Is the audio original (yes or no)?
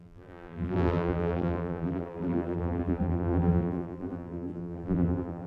no